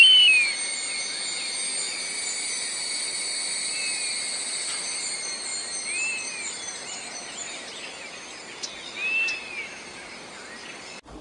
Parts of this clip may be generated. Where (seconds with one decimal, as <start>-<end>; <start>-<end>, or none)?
none